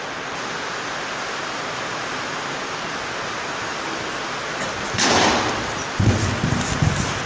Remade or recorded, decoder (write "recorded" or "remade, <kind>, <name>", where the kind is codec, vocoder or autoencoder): recorded